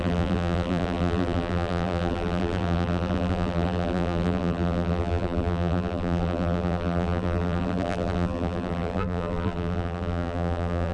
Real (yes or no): no